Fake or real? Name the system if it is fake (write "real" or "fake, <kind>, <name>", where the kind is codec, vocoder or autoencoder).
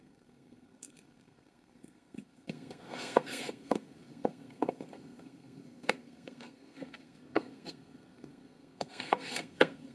fake, codec, SNAC